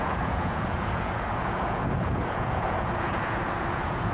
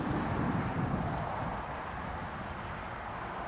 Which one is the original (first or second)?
second